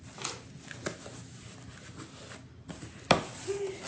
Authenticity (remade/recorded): recorded